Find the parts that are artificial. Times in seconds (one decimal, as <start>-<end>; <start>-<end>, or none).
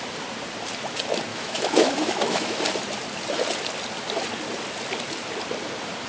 1.3-2.6